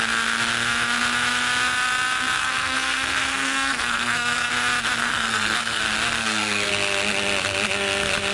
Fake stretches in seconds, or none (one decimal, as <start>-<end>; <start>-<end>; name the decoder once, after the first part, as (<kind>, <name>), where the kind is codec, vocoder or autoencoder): 2.4-4.5 (codec, SNAC); 5.0-5.8; 6.2-6.7